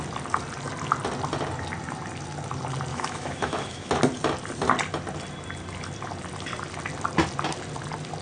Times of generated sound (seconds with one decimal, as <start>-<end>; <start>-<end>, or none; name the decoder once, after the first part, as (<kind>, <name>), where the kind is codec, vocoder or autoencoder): 2.9-3.9 (autoencoder, DAC-VAE)